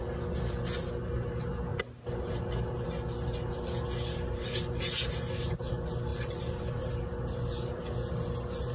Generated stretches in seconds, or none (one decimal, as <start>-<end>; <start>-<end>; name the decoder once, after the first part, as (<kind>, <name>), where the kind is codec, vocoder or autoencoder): none